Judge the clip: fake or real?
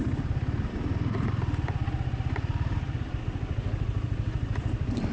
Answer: fake